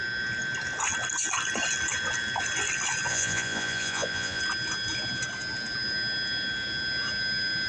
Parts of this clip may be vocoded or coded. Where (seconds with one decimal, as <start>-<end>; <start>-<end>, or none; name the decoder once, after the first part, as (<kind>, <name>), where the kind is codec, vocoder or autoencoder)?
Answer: 3.1-4.4 (vocoder, Vocos)